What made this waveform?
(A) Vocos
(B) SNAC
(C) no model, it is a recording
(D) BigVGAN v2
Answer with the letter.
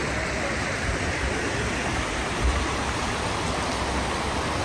C